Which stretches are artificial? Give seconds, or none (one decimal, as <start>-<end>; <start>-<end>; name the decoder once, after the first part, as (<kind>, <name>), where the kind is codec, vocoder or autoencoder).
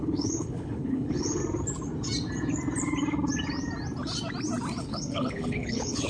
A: 0.0-1.4 (codec, HILCodec); 4.8-6.1